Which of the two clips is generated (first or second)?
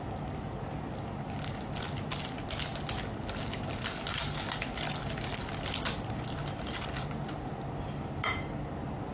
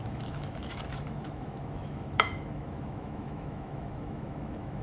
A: second